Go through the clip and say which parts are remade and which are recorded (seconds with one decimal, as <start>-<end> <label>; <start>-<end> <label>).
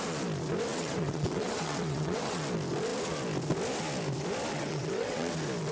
0.0-0.7 recorded; 0.7-2.4 remade; 2.4-4.5 recorded; 4.5-5.3 remade; 5.3-5.7 recorded